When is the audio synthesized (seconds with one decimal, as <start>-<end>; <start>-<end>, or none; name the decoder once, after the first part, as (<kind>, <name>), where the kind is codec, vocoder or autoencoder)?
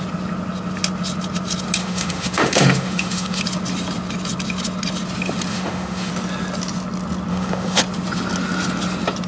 1.8-3.4 (autoencoder, DAC-VAE); 5.5-6.1; 7.3-7.8